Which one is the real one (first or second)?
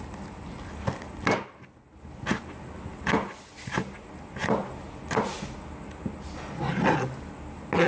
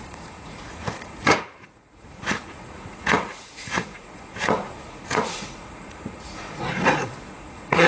first